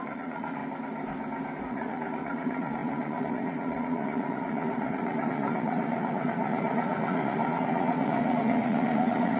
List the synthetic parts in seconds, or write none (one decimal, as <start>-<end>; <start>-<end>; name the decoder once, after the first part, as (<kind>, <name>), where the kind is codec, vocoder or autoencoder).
0.0-0.6 (vocoder, Vocos); 1.6-9.4